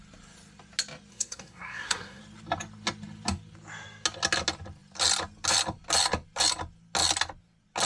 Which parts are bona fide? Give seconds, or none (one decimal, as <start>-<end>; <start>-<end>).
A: 0.0-1.1; 2.2-7.9